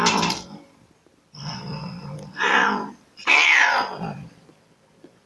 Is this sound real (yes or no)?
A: yes